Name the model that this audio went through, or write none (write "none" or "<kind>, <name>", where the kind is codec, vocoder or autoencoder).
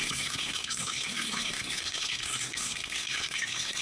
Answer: codec, SNAC